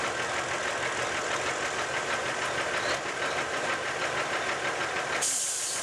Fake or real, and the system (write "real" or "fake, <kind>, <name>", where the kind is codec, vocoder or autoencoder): real